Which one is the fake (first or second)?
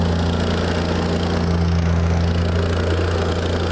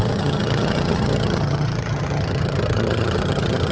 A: second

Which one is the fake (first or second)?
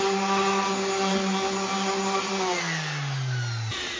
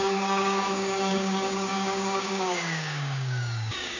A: second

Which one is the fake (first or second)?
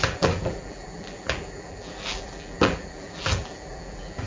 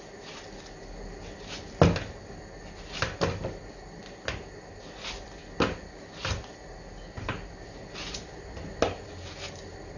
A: first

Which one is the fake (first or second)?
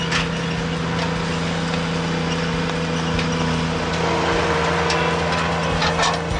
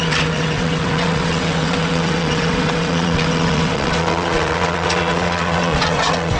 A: second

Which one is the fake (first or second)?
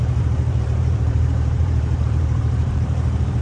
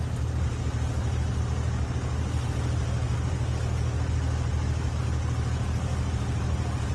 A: first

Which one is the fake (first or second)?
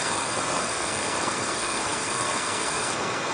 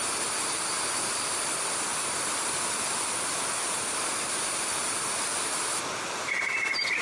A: first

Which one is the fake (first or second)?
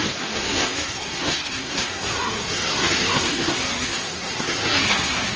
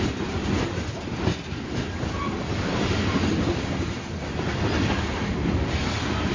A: first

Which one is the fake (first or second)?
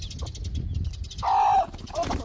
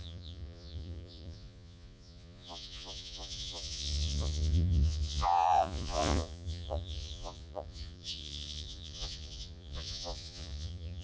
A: second